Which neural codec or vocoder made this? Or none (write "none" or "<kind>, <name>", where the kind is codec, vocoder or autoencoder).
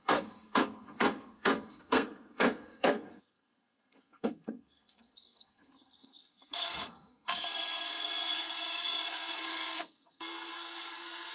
codec, SNAC